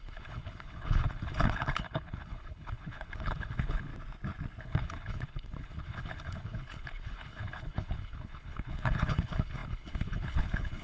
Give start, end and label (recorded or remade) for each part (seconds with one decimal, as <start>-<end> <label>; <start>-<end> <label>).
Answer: 0.0-3.9 remade; 3.9-4.6 recorded; 4.6-10.8 remade